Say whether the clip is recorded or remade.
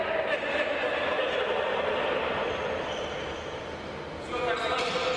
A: recorded